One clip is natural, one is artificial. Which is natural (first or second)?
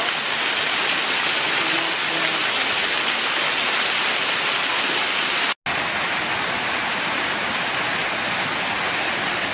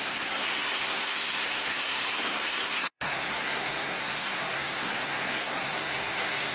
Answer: first